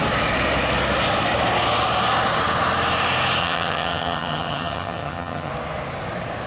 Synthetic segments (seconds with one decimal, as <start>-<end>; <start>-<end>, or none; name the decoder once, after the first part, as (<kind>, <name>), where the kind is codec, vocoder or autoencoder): 3.4-5.5 (vocoder, HiFi-GAN)